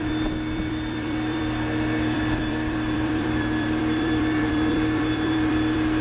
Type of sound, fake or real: fake